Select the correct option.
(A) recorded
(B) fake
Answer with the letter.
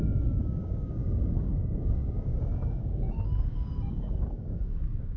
B